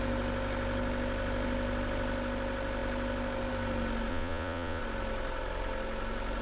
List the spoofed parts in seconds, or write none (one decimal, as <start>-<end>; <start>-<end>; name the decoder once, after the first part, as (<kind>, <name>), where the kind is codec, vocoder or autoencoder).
4.1-4.8 (vocoder, Vocos)